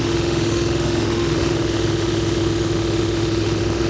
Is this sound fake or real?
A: fake